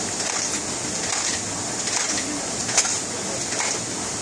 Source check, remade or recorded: recorded